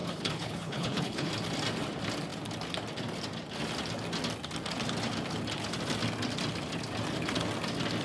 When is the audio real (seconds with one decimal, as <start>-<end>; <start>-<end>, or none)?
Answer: 1.3-8.0